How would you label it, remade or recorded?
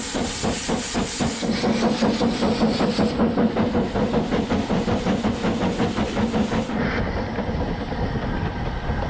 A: recorded